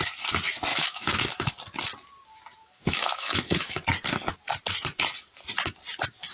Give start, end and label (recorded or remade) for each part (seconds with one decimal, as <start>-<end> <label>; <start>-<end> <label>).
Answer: 0.0-0.7 recorded; 0.7-1.5 remade; 1.5-2.6 recorded; 2.6-3.8 remade; 3.8-6.3 recorded